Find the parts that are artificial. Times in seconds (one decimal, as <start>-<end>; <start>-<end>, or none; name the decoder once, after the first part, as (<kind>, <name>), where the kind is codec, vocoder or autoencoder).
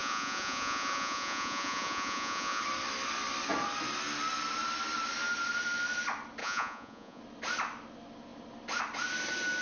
0.0-2.6 (vocoder, Vocos); 6.4-7.2